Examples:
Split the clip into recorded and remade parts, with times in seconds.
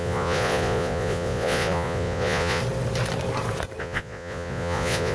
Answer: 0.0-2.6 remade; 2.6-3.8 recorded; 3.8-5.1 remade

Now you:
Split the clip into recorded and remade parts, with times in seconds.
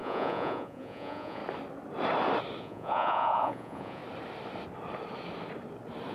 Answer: 0.0-1.4 remade; 1.4-2.6 recorded; 2.6-4.0 remade; 4.0-6.1 recorded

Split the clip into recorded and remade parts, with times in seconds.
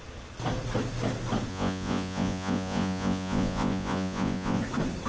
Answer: 0.0-1.5 recorded; 1.5-4.6 remade; 4.6-5.1 recorded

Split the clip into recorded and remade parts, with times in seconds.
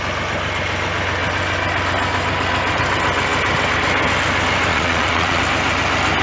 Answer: 0.0-4.7 recorded; 4.7-5.4 remade; 5.4-6.2 recorded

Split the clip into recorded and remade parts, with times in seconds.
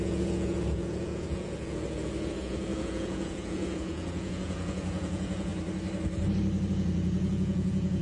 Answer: 0.0-5.5 remade; 5.5-6.7 recorded; 6.7-8.0 remade